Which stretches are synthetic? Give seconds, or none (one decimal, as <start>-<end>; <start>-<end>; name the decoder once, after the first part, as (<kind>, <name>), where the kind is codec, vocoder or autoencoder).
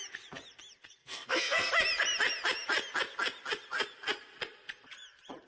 1.0-1.7 (codec, SNAC)